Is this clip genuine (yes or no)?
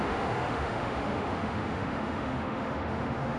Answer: no